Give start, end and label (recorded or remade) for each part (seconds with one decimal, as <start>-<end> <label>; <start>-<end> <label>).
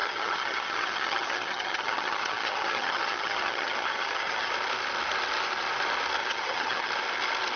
0.0-4.5 remade; 4.5-6.2 recorded; 6.2-6.9 remade; 6.9-7.6 recorded